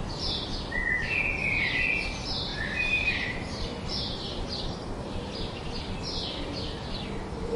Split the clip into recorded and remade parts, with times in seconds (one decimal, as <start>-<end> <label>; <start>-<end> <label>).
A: 0.0-2.5 recorded; 2.5-5.8 remade; 5.8-7.6 recorded